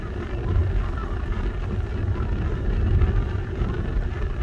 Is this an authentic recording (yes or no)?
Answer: yes